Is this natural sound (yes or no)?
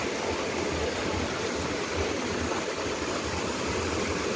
no